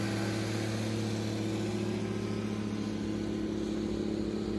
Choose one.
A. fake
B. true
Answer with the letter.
B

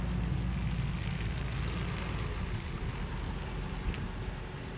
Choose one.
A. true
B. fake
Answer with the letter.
A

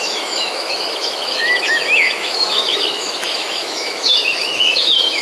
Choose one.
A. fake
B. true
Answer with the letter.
A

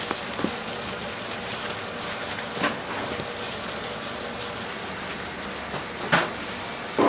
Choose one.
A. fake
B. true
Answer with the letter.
B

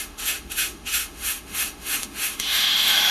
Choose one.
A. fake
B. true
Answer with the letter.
A